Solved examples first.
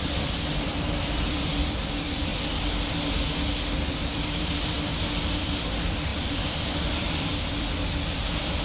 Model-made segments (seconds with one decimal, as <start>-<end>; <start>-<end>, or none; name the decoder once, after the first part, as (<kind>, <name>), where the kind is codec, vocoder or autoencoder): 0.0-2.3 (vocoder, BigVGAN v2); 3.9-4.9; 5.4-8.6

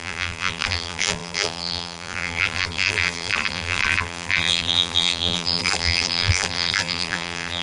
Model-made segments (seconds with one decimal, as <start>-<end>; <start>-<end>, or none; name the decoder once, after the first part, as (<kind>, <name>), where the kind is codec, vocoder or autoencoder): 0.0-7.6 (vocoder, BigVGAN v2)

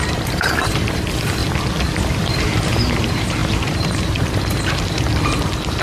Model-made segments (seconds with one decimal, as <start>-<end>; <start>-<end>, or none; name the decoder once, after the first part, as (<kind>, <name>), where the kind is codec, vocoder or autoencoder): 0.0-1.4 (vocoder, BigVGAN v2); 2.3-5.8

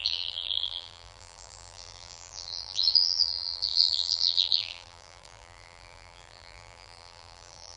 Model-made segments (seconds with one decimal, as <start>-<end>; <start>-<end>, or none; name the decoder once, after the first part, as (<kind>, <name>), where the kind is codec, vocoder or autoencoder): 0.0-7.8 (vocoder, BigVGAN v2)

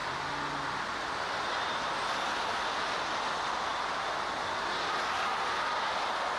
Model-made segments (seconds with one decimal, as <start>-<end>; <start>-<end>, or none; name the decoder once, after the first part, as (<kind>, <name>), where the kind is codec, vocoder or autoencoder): none

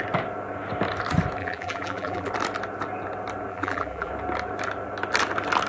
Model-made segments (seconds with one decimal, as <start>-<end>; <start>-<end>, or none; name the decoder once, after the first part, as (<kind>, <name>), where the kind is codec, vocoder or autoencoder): 1.4-2.3 (vocoder, BigVGAN v2); 3.5-4.1

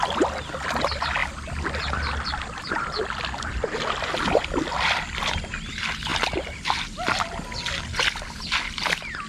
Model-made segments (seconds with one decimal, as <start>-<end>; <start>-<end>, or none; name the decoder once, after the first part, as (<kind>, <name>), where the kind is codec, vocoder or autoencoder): none